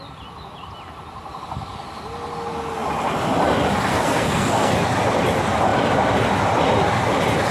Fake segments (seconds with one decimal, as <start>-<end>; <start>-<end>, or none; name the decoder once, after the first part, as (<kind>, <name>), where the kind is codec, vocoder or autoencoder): 3.9-4.7 (codec, SNAC)